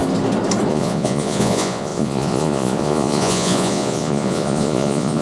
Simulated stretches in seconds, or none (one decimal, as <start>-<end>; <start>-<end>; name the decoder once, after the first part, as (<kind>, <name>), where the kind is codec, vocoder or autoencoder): 0.7-5.2 (vocoder, Vocos)

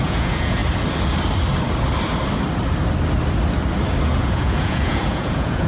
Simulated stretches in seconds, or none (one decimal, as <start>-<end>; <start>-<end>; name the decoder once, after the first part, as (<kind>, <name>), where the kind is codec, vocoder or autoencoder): 0.0-0.6 (vocoder, Vocos); 4.0-5.7

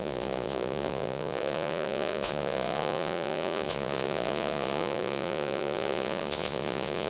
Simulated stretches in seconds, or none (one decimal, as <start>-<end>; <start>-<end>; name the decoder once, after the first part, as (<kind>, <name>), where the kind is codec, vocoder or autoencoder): 0.0-7.1 (vocoder, Vocos)

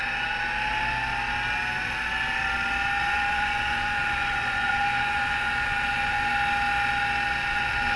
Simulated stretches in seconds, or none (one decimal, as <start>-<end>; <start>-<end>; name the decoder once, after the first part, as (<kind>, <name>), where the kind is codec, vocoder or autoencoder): 3.0-6.3 (vocoder, Vocos); 7.5-8.0

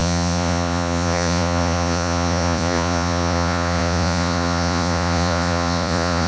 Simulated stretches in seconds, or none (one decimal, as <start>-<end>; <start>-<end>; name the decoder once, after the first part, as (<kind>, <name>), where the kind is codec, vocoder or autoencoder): 0.0-6.3 (vocoder, Vocos)

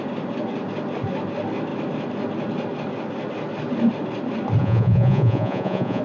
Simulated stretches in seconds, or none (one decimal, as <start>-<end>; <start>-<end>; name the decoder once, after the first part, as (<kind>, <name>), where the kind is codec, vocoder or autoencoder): 4.6-6.0 (vocoder, Vocos)

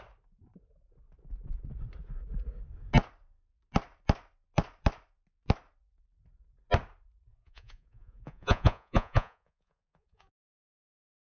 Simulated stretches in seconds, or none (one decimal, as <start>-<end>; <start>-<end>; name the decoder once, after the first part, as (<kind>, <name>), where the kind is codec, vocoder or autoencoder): 7.3-11.3 (vocoder, Vocos)

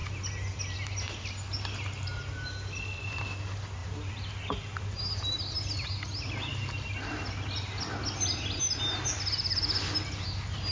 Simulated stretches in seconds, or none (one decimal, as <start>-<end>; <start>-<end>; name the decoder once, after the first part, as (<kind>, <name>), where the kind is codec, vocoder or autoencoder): none